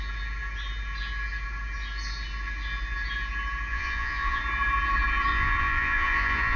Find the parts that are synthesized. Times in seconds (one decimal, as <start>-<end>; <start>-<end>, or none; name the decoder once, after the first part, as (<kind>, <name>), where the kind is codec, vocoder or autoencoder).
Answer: 3.7-4.4 (vocoder, Vocos); 5.3-6.6